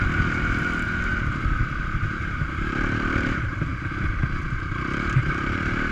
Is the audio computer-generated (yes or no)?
yes